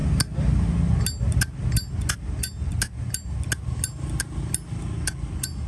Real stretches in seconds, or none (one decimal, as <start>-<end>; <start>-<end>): 0.0-5.7